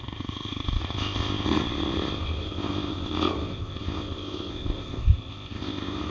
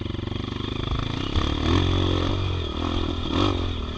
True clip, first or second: second